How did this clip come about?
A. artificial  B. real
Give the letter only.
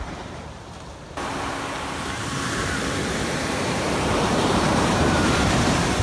A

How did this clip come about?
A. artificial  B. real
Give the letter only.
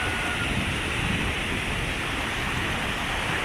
A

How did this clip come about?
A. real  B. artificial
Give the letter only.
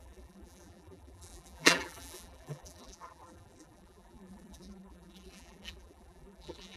B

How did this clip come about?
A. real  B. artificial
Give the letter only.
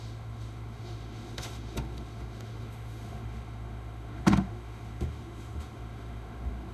B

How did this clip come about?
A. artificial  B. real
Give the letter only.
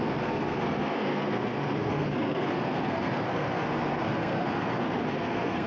A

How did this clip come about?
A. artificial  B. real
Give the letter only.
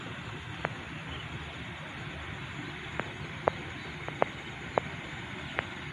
B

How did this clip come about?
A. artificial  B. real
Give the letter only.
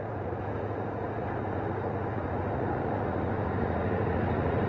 A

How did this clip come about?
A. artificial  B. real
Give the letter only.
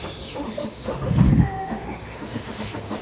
A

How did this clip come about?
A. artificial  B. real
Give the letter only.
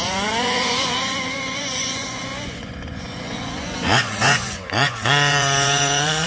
A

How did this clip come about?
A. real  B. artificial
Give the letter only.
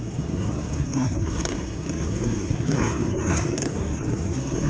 B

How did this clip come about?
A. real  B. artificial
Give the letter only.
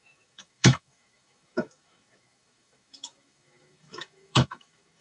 B